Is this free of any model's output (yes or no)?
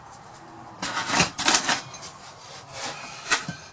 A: yes